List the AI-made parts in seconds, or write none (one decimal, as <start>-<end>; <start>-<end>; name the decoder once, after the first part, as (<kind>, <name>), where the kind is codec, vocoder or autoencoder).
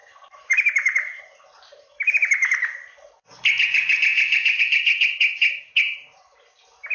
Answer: 0.0-1.4 (vocoder, BigVGAN v2)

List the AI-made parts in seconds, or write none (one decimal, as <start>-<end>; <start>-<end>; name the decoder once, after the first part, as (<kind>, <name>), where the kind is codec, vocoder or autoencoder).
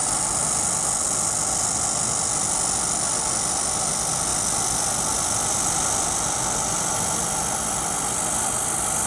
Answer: none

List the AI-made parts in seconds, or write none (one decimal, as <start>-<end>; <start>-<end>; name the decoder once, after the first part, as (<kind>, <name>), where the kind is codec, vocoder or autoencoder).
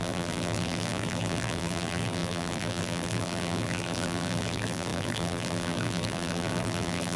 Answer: 0.0-7.2 (vocoder, BigVGAN v2)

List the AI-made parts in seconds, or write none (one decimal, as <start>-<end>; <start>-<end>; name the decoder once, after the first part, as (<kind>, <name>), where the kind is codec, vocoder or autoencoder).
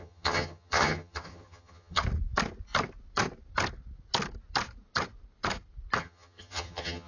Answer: 0.0-2.0 (vocoder, HiFi-GAN); 6.0-7.1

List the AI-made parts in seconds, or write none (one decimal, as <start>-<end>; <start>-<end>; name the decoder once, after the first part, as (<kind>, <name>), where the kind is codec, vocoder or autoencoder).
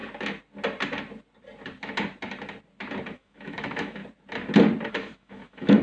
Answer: 3.1-4.0 (autoencoder, DAC-VAE); 4.9-5.8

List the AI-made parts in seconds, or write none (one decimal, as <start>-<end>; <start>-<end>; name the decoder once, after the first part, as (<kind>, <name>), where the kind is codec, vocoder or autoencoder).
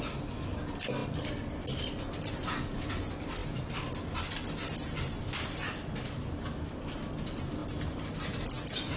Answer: none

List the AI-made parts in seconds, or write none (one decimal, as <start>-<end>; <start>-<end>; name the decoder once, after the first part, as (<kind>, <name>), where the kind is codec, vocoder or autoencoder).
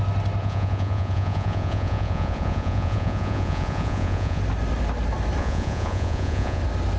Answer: 0.4-4.4 (vocoder, Vocos); 5.4-6.6